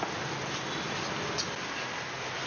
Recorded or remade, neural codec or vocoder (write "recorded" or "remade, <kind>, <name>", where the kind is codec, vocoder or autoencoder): recorded